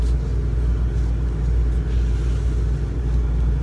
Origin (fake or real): real